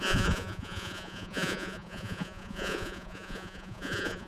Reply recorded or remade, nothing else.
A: remade